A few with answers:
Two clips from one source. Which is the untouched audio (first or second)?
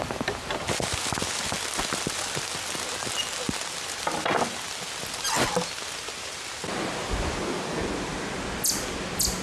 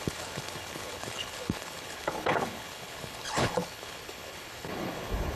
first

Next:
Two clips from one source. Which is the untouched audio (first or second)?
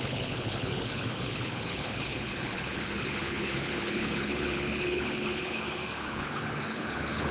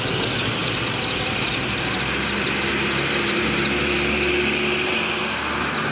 second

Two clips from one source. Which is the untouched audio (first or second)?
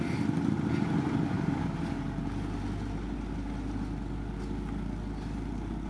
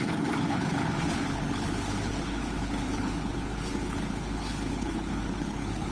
first